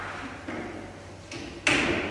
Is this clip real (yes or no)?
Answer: yes